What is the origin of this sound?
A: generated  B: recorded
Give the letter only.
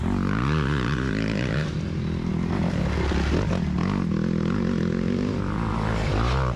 B